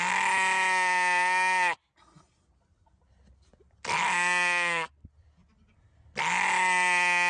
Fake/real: real